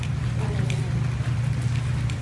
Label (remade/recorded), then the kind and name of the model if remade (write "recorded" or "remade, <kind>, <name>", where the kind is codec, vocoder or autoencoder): recorded